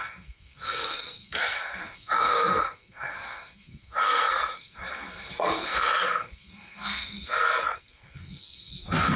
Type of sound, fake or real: fake